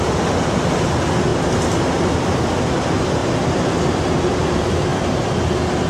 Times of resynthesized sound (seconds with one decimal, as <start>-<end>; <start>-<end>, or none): none